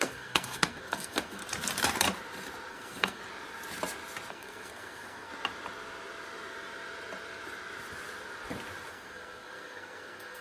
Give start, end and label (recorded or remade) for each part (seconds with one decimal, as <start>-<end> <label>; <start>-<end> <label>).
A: 0.0-1.4 remade; 1.4-2.7 recorded; 2.7-3.2 remade; 3.2-4.3 recorded; 4.3-5.3 remade; 5.3-8.9 recorded; 8.9-10.4 remade